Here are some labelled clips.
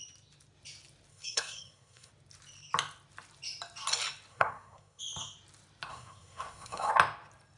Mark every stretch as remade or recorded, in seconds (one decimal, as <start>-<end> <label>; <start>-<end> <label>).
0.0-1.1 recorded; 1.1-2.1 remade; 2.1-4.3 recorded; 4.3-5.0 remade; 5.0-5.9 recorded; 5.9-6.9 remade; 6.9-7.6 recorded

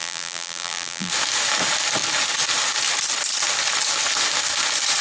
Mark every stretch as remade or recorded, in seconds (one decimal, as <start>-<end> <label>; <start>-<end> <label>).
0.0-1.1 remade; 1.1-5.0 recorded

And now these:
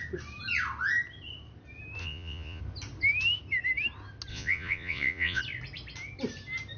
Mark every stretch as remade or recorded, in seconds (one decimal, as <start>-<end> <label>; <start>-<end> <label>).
0.0-2.0 recorded; 2.0-2.6 remade; 2.6-4.3 recorded; 4.3-5.4 remade; 5.4-6.8 recorded

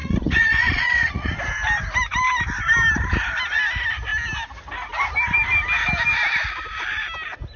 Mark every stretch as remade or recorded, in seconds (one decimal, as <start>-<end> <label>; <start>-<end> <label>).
0.0-1.4 remade; 1.4-7.6 recorded

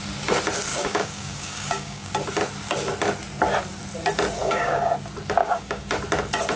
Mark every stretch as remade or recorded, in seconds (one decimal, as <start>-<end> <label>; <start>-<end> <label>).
0.0-0.7 recorded; 0.7-2.1 remade; 2.1-4.4 recorded; 4.4-4.9 remade; 4.9-5.4 recorded; 5.4-5.9 remade; 5.9-6.6 recorded

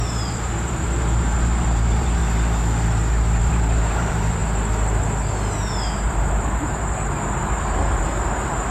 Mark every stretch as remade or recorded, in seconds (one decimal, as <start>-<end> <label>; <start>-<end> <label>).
0.0-2.2 remade; 2.2-3.4 recorded; 3.4-4.4 remade; 4.4-6.1 recorded; 6.1-8.7 remade

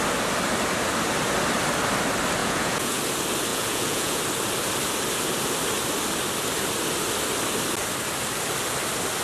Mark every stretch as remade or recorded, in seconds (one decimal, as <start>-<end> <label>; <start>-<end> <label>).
0.0-2.4 recorded; 2.4-3.0 remade; 3.0-3.5 recorded; 3.5-4.2 remade; 4.2-9.2 recorded